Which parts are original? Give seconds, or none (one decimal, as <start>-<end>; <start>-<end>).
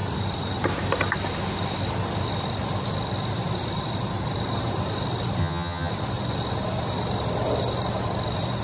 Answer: 0.0-5.4; 5.9-8.6